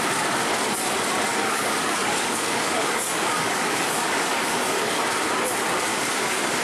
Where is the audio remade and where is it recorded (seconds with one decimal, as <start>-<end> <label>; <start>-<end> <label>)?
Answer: 0.0-1.3 recorded; 1.3-5.0 remade; 5.0-5.9 recorded; 5.9-6.6 remade